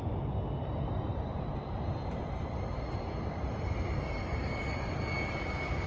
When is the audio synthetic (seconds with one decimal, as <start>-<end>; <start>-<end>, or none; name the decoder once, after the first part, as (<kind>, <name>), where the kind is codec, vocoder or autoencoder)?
1.1-4.6 (vocoder, BigVGAN v2)